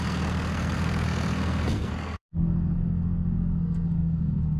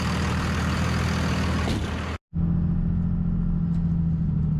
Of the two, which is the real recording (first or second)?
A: second